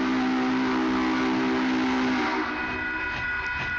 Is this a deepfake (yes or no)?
no